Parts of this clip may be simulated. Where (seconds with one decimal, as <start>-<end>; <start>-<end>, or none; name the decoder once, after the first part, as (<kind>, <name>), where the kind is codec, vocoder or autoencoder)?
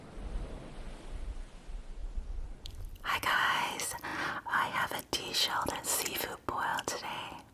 2.0-2.8 (vocoder, BigVGAN v2)